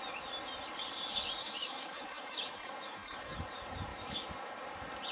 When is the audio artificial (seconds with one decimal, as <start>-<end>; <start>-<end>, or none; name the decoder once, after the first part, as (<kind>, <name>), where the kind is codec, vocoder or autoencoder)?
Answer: 1.4-3.4 (autoencoder, DAC-VAE); 3.9-4.5